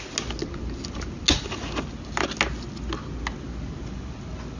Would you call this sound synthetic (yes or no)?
no